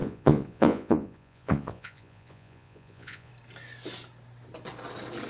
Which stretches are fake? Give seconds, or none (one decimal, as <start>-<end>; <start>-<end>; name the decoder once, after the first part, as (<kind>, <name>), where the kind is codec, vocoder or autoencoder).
0.0-3.3 (vocoder, Vocos)